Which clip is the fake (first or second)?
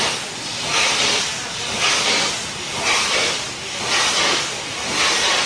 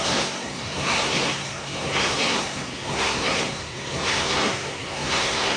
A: second